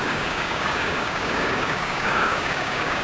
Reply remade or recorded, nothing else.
remade